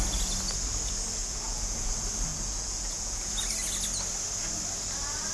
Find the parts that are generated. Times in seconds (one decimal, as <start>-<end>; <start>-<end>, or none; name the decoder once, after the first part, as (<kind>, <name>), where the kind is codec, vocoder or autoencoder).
1.2-1.9 (vocoder, Vocos); 2.3-3.3